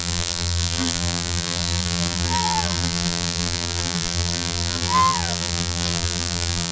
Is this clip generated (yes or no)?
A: yes